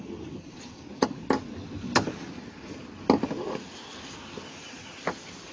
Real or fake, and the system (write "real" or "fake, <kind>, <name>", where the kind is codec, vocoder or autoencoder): real